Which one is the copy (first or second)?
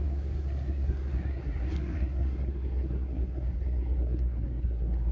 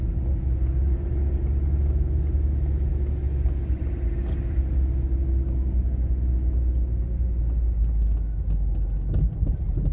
first